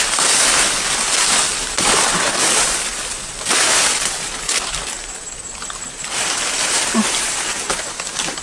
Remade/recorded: remade